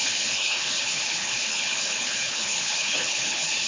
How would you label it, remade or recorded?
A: remade